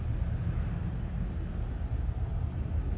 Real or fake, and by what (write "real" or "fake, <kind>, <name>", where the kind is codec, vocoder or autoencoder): real